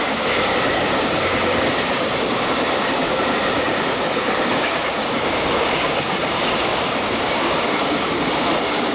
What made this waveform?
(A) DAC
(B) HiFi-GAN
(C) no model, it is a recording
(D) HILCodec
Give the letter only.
A